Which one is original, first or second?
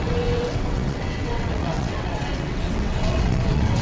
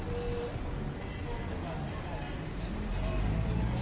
second